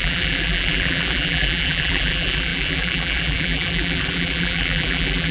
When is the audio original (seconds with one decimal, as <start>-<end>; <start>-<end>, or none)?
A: none